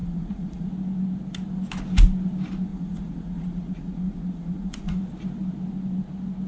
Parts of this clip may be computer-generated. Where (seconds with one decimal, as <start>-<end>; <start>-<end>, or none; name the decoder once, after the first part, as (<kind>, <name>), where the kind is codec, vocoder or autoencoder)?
0.0-0.7 (vocoder, Vocos); 2.7-5.0